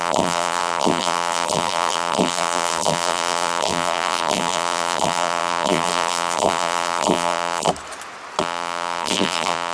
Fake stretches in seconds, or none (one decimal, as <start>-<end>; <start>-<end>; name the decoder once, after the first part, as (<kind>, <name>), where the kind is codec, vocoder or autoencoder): 0.0-7.7 (vocoder, BigVGAN v2); 8.4-9.7